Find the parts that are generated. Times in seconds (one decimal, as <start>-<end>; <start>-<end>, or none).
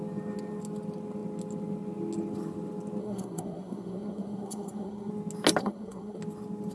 3.0-5.1; 5.6-6.2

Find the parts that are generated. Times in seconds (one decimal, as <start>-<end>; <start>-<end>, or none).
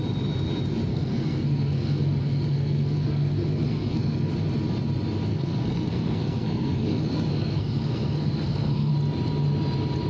0.9-4.3; 5.3-8.9